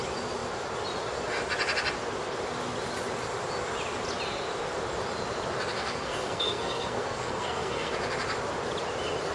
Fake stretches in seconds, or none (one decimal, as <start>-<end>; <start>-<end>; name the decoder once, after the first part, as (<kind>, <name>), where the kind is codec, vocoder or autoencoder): 5.8-7.9 (codec, SNAC)